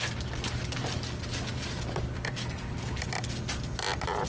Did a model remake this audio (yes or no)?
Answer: no